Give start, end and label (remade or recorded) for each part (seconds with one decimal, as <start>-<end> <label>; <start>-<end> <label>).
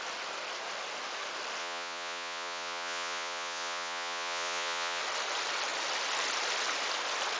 0.0-1.6 recorded; 1.6-5.0 remade; 5.0-7.4 recorded